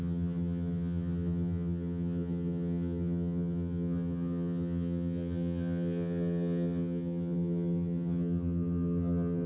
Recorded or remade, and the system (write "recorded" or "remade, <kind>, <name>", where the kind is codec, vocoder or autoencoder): remade, vocoder, HiFi-GAN